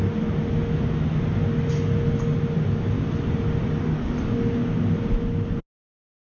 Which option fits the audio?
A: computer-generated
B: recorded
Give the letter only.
B